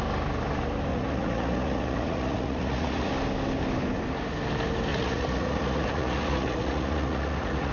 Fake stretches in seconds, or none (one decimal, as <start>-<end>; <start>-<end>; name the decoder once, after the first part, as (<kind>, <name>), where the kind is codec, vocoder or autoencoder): 0.9-3.1 (vocoder, Vocos); 4.9-7.7